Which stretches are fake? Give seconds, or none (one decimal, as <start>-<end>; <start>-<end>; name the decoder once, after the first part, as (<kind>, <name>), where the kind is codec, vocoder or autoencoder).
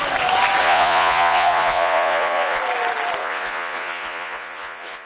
0.6-2.6 (vocoder, Vocos); 3.2-5.1